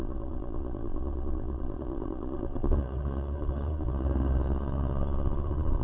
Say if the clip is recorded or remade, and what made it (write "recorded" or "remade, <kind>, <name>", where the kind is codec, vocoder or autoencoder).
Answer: remade, vocoder, Vocos